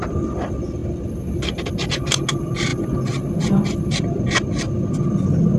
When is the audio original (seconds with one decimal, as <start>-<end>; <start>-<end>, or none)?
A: 0.0-5.6